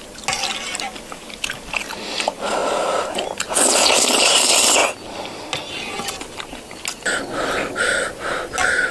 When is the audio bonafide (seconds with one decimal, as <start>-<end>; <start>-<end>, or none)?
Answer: 0.0-8.9